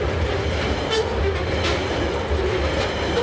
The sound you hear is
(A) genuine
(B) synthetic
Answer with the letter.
A